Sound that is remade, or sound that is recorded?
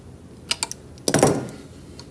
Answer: recorded